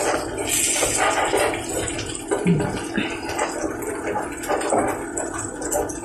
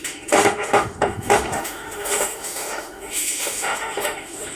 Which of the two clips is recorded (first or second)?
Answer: first